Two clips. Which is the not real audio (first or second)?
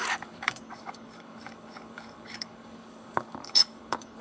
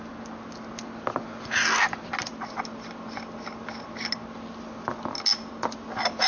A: first